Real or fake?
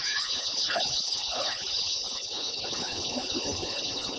fake